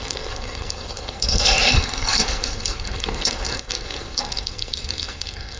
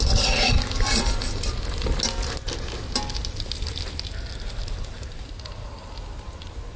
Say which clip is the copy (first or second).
first